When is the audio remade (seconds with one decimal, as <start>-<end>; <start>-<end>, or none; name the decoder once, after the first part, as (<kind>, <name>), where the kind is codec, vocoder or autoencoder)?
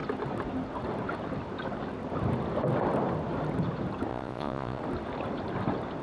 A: 4.1-4.8 (vocoder, Vocos)